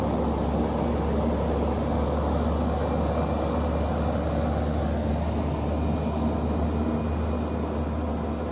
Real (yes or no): yes